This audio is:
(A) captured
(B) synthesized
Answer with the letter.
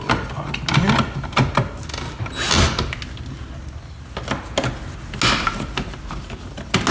A